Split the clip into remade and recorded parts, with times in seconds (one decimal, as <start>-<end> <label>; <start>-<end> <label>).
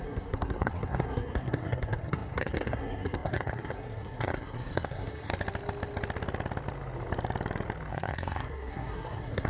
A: 0.0-5.3 remade; 5.3-7.9 recorded; 7.9-9.5 remade